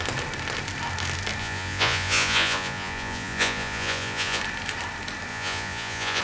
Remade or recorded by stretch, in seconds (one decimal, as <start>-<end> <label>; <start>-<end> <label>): 0.0-1.4 recorded; 1.4-4.4 remade; 4.4-5.3 recorded; 5.3-6.2 remade